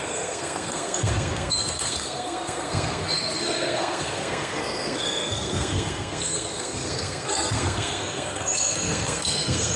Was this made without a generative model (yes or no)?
no